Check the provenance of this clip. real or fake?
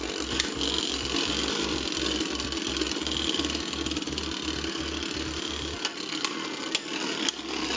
real